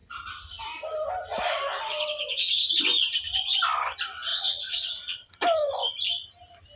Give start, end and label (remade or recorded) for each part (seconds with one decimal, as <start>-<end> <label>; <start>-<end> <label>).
0.0-1.9 recorded; 1.9-2.5 remade; 2.5-4.3 recorded; 4.3-5.3 remade; 5.3-6.8 recorded